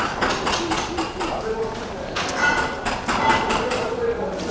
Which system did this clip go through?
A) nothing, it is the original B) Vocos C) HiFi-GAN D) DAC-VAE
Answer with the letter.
A